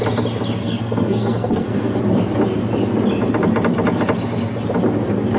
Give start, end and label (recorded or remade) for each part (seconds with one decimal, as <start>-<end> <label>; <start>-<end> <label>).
0.0-0.6 recorded; 0.6-2.0 remade; 2.0-5.4 recorded